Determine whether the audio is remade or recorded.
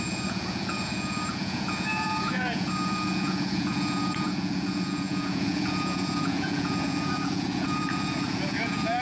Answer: remade